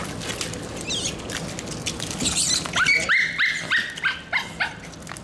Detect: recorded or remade recorded